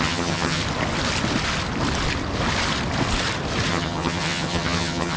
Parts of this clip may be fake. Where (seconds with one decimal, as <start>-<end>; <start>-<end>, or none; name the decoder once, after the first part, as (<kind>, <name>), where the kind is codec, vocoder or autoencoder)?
0.0-0.6 (vocoder, HiFi-GAN); 3.7-5.2